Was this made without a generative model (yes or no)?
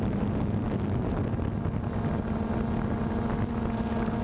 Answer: yes